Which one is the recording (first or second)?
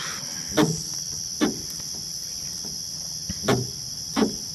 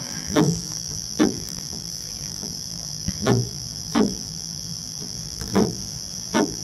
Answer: first